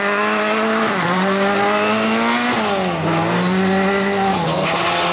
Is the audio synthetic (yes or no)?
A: no